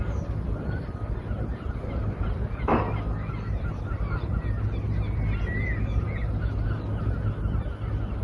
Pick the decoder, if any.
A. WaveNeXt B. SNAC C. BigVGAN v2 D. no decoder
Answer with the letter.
D